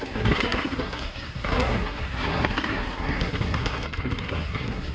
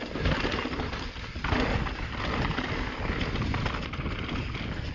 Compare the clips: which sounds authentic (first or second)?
second